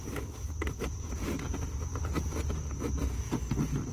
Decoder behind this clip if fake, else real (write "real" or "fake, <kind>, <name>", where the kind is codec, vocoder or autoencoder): real